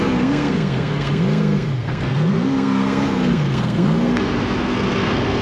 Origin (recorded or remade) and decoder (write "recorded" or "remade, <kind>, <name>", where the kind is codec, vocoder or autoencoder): remade, codec, SNAC